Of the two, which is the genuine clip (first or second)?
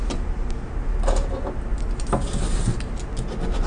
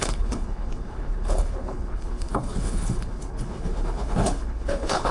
first